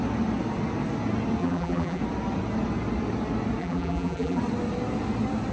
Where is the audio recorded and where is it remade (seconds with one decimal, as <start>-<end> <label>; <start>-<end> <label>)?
0.0-1.4 recorded; 1.4-2.0 remade; 2.0-3.6 recorded; 3.6-4.4 remade; 4.4-5.5 recorded